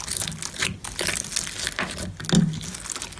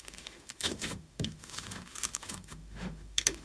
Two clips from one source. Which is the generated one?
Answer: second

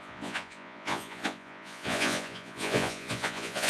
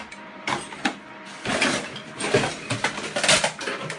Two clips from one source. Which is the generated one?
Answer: first